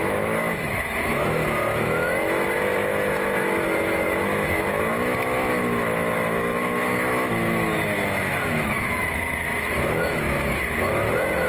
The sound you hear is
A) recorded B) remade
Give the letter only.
B